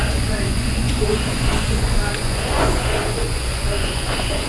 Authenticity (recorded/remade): remade